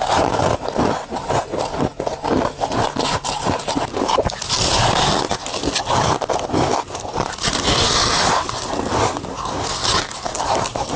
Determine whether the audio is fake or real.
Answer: real